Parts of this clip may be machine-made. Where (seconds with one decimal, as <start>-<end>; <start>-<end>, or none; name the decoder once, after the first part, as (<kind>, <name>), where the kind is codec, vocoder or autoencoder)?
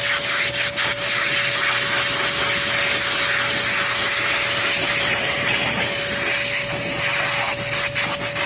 4.8-5.8 (vocoder, BigVGAN v2)